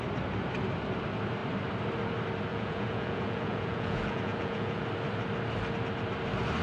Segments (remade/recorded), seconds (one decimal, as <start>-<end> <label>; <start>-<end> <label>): 0.0-2.5 recorded; 2.5-4.8 remade; 4.8-6.6 recorded